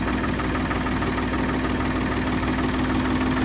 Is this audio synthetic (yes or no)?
no